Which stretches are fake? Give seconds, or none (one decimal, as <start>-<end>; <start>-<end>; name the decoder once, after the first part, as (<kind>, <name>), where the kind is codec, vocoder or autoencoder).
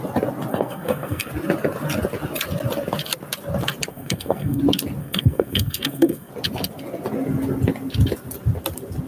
0.5-1.3 (codec, SNAC); 3.9-4.6; 5.0-6.3